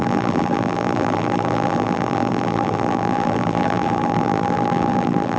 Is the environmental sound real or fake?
fake